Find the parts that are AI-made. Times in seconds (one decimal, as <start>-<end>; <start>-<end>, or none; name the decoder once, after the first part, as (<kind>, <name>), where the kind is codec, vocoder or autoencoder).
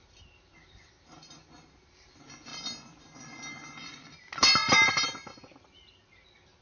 none